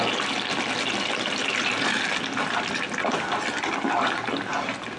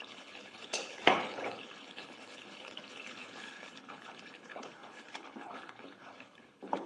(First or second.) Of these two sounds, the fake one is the second